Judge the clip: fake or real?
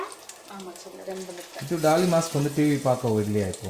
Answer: real